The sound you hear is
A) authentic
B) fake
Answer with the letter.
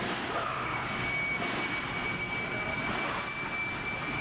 A